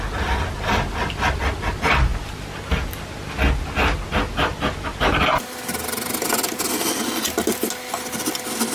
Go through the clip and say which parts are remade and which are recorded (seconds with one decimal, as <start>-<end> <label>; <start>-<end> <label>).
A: 0.0-8.7 recorded